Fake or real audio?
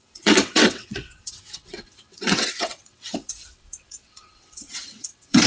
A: fake